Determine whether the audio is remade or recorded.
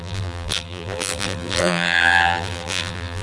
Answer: remade